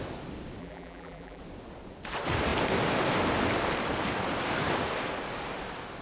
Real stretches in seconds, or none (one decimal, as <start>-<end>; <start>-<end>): 0.0-0.6; 1.4-6.0